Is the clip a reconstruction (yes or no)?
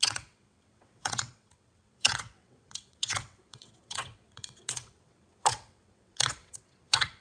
yes